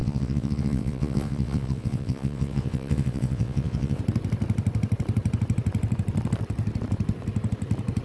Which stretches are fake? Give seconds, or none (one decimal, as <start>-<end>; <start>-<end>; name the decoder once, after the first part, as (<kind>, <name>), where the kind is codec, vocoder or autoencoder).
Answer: 0.0-4.0 (vocoder, WaveNeXt)